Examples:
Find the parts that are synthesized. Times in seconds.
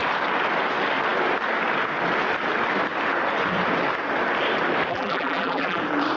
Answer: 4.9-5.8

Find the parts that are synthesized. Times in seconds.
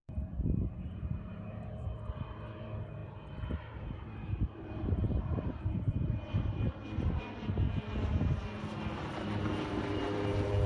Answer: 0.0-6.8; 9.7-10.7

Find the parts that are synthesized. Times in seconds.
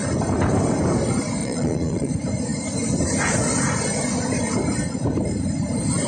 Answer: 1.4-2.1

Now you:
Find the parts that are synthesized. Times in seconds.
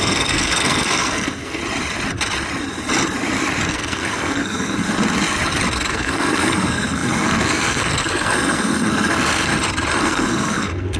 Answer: 0.0-1.6; 3.7-4.8; 5.9-9.5; 10.0-11.0